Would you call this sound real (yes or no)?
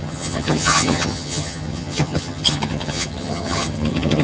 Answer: no